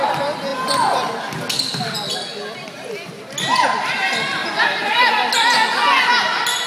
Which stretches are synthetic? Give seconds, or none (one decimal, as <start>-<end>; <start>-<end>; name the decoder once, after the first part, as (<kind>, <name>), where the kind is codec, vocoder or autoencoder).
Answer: 4.4-5.1 (vocoder, BigVGAN v2)